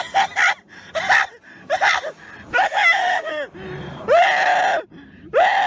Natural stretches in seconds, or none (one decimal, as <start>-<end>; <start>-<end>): 0.0-2.5; 3.3-5.7